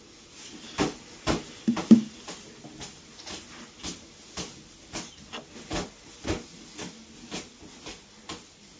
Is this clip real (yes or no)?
yes